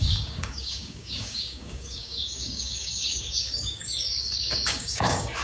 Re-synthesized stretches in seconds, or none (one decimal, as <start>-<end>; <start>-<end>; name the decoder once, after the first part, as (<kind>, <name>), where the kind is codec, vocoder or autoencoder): 0.0-5.4 (codec, DAC)